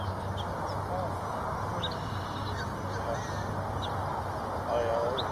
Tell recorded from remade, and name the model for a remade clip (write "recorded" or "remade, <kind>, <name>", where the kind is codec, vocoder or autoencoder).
recorded